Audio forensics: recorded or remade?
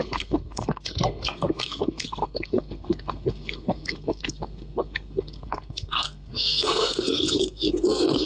remade